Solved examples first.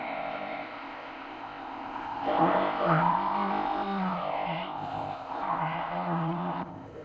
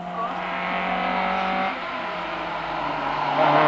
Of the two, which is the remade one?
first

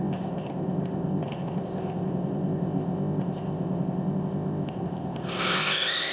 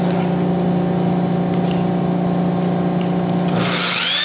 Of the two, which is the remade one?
first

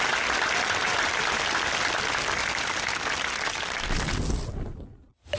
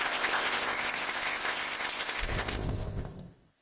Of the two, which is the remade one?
second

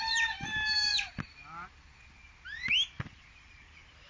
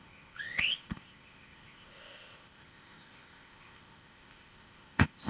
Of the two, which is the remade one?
second